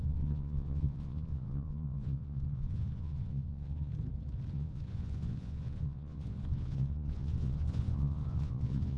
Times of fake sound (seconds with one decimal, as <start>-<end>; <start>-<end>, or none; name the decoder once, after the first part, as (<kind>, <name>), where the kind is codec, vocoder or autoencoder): 0.0-3.9 (vocoder, Vocos); 4.5-9.0